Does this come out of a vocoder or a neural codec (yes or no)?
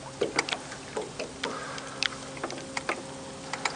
no